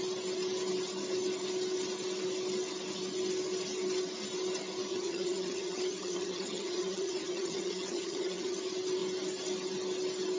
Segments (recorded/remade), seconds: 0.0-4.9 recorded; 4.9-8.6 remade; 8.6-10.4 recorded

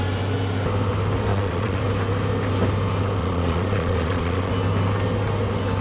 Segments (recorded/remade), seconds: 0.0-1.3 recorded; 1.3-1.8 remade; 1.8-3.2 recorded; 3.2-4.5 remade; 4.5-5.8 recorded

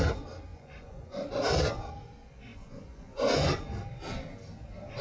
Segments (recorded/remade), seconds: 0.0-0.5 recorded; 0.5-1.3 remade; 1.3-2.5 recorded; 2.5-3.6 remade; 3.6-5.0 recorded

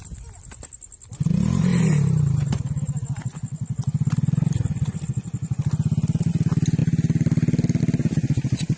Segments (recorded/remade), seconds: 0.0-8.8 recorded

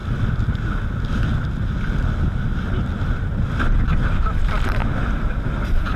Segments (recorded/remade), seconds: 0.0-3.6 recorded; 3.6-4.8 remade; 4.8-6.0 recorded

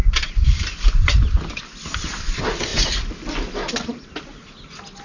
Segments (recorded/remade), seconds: 0.0-1.0 remade; 1.0-5.0 recorded

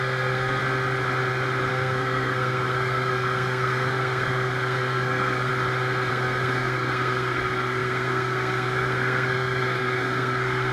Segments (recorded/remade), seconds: 0.0-0.6 remade; 0.6-1.7 recorded; 1.7-5.5 remade; 5.5-6.1 recorded; 6.1-10.7 remade

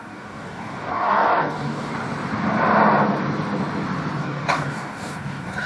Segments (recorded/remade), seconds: 0.0-1.9 remade; 1.9-4.2 recorded; 4.2-5.7 remade